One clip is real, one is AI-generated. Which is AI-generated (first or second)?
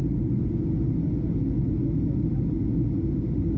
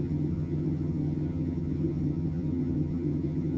second